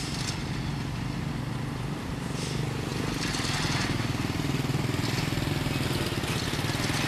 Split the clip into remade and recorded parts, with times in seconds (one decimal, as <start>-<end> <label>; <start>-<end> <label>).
0.0-2.9 recorded; 2.9-5.5 remade; 5.5-7.1 recorded